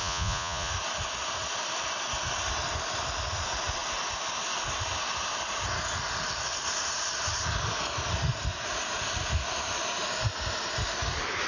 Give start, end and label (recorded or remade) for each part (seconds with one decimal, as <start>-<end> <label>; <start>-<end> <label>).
0.0-0.7 remade; 0.7-11.5 recorded